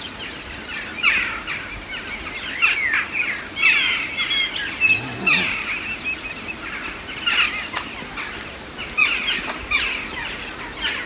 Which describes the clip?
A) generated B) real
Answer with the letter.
B